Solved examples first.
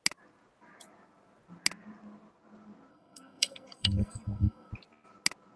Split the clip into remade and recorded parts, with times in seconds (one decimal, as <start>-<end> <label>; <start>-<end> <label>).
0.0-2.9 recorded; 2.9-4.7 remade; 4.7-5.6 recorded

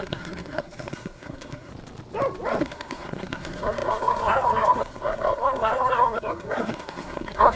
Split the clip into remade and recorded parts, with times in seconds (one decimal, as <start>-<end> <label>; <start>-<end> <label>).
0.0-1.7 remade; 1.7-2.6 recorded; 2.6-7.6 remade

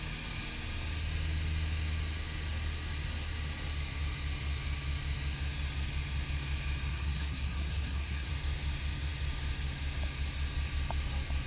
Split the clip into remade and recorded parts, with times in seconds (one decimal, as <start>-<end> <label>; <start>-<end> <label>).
0.0-6.9 recorded; 6.9-8.3 remade; 8.3-11.5 recorded

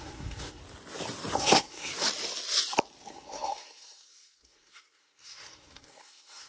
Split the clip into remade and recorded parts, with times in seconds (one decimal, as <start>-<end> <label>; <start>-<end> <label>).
0.0-0.6 remade; 0.6-1.4 recorded; 1.4-1.9 remade; 1.9-3.1 recorded; 3.1-6.5 remade